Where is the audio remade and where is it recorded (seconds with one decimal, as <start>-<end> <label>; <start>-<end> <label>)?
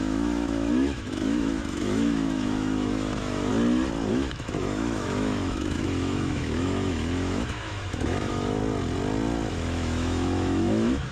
0.0-3.5 remade; 3.5-4.1 recorded; 4.1-8.6 remade; 8.6-9.5 recorded; 9.5-11.1 remade